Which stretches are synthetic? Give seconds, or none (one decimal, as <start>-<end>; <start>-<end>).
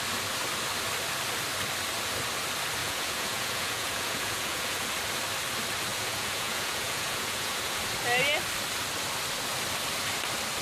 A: 2.8-4.9; 5.9-7.8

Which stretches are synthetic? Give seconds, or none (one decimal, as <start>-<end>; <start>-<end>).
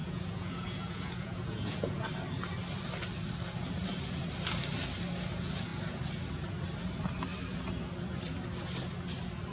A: 0.0-2.1